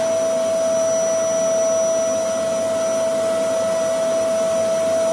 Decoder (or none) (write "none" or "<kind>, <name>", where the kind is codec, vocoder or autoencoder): none